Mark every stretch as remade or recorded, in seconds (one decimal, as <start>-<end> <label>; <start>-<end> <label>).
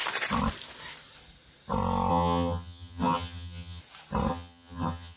0.0-2.1 recorded; 2.1-3.8 remade; 3.8-4.3 recorded; 4.3-5.2 remade